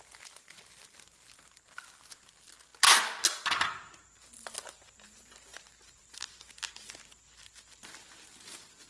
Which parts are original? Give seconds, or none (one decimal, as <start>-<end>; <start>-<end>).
0.0-5.5; 6.6-8.9